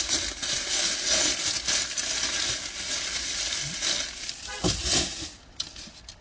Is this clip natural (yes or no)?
yes